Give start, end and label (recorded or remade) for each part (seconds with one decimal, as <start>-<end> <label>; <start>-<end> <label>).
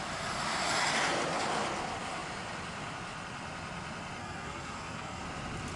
0.0-4.2 recorded; 4.2-5.2 remade; 5.2-5.8 recorded